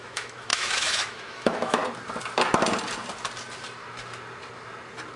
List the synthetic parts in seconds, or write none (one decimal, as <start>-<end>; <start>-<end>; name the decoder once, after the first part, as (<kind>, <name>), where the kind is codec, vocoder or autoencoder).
0.0-1.8 (autoencoder, DAC-VAE)